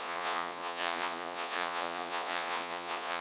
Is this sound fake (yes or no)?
yes